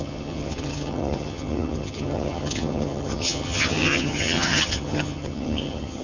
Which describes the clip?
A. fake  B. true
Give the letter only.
A